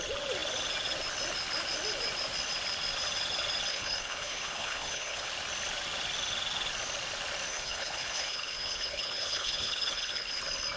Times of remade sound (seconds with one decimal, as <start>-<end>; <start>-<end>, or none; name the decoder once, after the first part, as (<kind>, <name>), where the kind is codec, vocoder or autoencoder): 3.7-5.3 (codec, HILCodec); 7.5-10.4

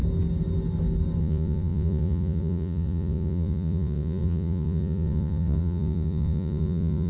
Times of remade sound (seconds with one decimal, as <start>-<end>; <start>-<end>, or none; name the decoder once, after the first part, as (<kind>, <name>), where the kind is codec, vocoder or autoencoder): 1.2-7.1 (vocoder, Vocos)

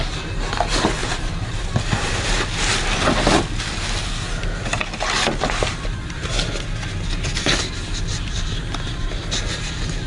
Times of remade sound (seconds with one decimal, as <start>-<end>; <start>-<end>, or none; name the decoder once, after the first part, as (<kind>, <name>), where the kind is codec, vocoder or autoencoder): 1.0-2.1 (vocoder, BigVGAN v2); 8.1-9.2

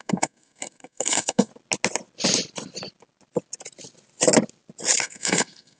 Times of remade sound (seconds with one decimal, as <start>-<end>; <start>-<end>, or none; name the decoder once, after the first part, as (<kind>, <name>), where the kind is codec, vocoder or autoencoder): 0.0-1.5 (codec, SNAC); 5.0-5.8

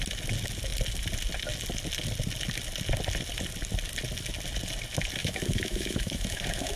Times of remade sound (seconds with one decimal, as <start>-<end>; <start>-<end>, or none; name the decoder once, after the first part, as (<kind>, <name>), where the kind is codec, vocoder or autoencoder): 5.2-6.8 (autoencoder, DAC-VAE)

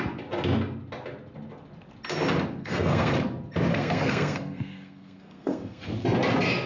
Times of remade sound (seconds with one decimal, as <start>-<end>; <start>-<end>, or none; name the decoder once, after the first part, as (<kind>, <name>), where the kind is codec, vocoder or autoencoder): 2.6-3.1 (codec, SNAC); 3.7-5.9